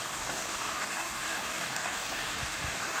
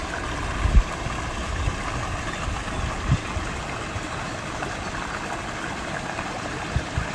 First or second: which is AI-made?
first